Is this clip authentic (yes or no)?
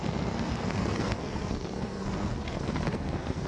no